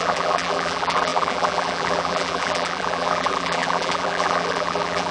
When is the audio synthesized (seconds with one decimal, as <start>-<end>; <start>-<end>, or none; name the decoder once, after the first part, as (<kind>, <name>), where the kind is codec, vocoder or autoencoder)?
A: 0.0-5.1 (vocoder, BigVGAN v2)